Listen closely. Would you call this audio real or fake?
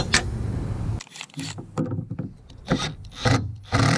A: fake